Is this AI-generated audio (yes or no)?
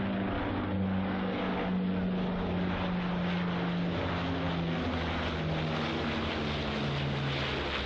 no